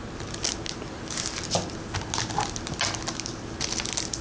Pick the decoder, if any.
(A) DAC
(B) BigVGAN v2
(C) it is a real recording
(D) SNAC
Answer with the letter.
C